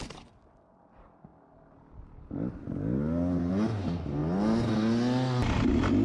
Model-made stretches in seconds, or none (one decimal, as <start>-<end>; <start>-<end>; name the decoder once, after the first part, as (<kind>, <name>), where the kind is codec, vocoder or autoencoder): none